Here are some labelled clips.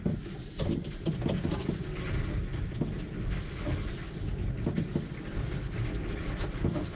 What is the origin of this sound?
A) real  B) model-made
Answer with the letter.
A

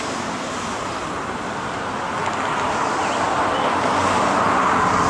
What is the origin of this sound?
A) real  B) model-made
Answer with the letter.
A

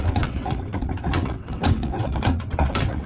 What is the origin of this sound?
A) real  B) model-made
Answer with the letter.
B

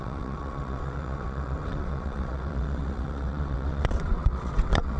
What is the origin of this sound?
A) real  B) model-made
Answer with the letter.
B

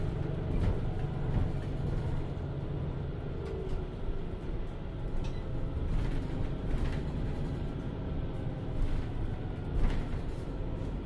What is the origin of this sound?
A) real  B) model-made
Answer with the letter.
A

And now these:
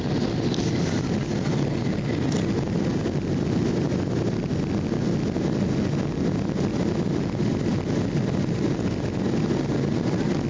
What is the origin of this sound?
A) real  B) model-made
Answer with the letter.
A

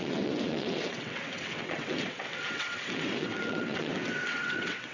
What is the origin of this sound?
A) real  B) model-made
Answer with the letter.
B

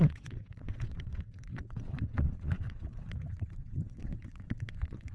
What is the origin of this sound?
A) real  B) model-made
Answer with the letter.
B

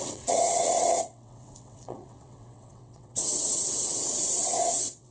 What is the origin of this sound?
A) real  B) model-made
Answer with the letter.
B